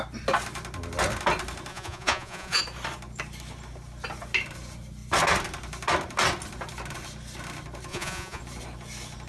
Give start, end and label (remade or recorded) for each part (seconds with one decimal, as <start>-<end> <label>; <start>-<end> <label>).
0.0-1.7 recorded; 1.7-2.6 remade; 2.6-7.9 recorded; 7.9-8.4 remade; 8.4-9.3 recorded